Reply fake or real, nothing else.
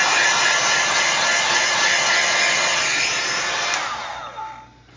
real